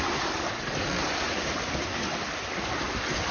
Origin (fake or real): real